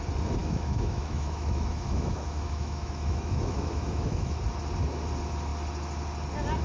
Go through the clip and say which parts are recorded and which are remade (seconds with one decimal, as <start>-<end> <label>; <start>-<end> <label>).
0.0-0.4 recorded; 0.4-4.4 remade; 4.4-6.6 recorded

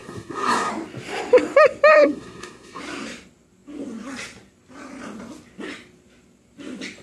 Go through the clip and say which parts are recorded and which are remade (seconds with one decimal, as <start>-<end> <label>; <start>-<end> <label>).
0.0-0.7 remade; 0.7-1.9 recorded; 1.9-2.8 remade; 2.8-7.0 recorded

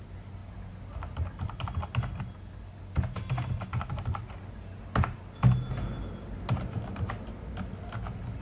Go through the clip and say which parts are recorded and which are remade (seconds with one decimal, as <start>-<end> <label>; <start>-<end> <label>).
0.0-8.4 recorded

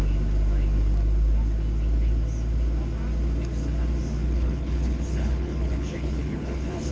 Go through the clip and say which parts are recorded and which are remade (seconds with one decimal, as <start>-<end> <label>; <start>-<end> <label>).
0.0-4.2 recorded; 4.2-6.9 remade

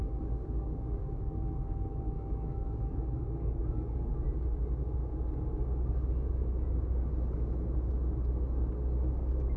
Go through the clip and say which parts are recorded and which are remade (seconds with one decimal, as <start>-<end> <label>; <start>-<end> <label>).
0.0-4.1 remade; 4.1-9.6 recorded

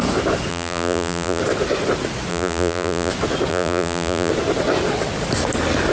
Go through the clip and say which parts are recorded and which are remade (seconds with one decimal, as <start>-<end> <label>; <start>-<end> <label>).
0.0-0.5 recorded; 0.5-1.4 remade; 1.4-2.3 recorded; 2.3-3.1 remade; 3.1-3.5 recorded; 3.5-4.3 remade; 4.3-5.9 recorded